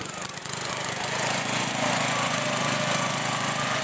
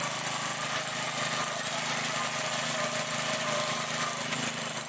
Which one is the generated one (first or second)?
first